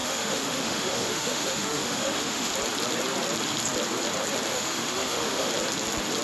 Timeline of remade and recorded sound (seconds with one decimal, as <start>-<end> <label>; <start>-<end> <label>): 0.0-2.5 remade; 2.5-4.5 recorded; 4.5-5.5 remade; 5.5-6.2 recorded